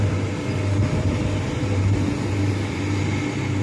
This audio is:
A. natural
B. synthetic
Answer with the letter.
A